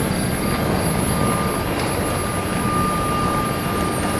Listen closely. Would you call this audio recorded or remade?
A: recorded